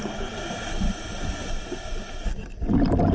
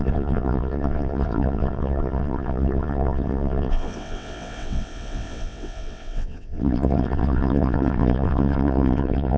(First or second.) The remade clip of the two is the second